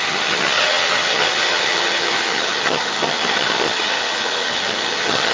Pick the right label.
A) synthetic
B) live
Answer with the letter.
A